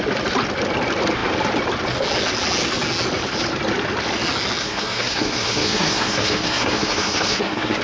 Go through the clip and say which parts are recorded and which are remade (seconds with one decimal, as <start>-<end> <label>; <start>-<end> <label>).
0.0-4.6 recorded; 4.6-7.8 remade